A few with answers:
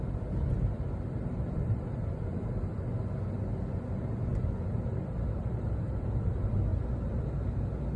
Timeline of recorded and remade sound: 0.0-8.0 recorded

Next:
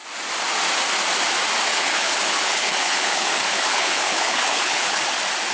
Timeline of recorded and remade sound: 0.0-1.7 recorded; 1.7-5.0 remade; 5.0-5.5 recorded

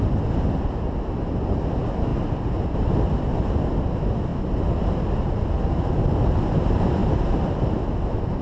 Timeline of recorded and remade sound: 0.0-2.1 recorded; 2.1-2.9 remade; 2.9-8.4 recorded

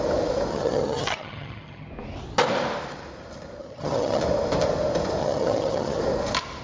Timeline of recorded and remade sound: 0.0-0.5 recorded; 0.5-1.9 remade; 1.9-3.6 recorded; 3.6-4.2 remade; 4.2-5.2 recorded; 5.2-6.0 remade; 6.0-6.6 recorded

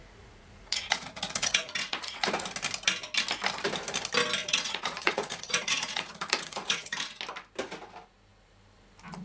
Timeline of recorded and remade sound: 0.0-2.3 remade; 2.3-4.4 recorded; 4.4-7.2 remade; 7.2-9.2 recorded

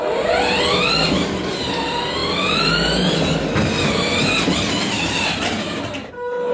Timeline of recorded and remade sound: 0.0-6.5 recorded